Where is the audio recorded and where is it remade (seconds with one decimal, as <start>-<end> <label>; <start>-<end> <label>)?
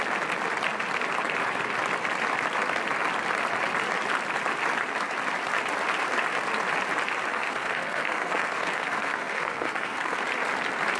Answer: 0.0-7.3 recorded; 7.3-10.2 remade; 10.2-11.0 recorded